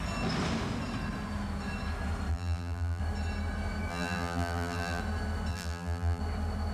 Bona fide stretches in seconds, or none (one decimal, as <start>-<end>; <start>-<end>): 0.0-2.3; 3.0-3.9; 5.0-5.5; 6.2-6.7